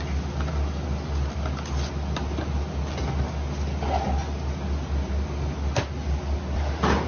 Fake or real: real